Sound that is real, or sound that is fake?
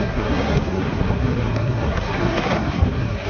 fake